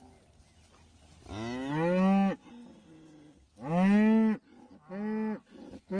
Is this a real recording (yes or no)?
yes